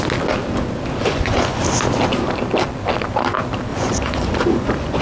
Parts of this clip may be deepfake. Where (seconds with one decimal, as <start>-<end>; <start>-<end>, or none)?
1.0-1.6; 3.7-5.0